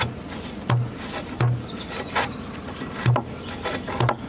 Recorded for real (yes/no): yes